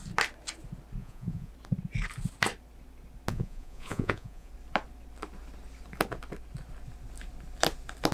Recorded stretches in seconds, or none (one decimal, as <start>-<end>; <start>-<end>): 0.0-1.0; 1.5-3.3; 4.5-8.1